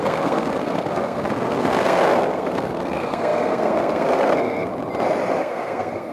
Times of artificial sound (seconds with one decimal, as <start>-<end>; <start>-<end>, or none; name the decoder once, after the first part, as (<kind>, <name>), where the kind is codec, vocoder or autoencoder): 0.0-4.7 (codec, SNAC); 5.4-6.1